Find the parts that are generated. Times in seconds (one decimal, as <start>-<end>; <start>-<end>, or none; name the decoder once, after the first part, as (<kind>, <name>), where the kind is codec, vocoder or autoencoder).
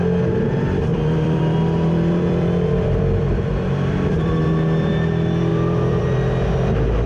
0.9-4.5 (vocoder, BigVGAN v2); 5.5-6.0